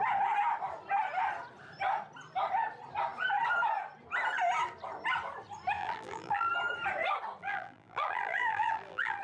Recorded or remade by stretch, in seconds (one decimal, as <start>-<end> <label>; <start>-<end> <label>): 0.0-5.8 recorded; 5.8-6.5 remade; 6.5-7.4 recorded; 7.4-9.2 remade